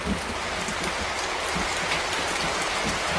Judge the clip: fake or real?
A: real